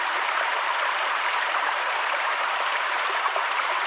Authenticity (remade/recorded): remade